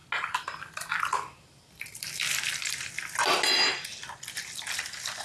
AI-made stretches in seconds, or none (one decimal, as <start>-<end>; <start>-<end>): none